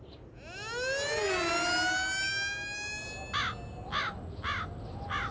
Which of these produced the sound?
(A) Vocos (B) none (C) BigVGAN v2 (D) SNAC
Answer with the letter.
B